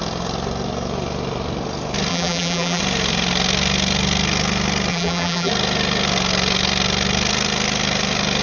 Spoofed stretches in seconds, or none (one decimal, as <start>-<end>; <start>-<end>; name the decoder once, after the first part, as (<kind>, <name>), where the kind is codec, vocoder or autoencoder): 2.1-2.8 (vocoder, BigVGAN v2); 4.9-5.5